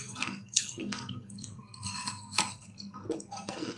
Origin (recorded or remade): remade